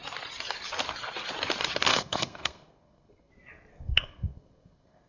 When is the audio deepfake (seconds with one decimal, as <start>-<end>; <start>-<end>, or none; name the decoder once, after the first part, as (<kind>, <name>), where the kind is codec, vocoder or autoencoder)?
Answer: 1.9-3.3 (codec, SNAC); 3.7-5.1